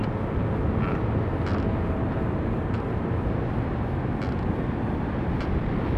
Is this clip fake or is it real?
real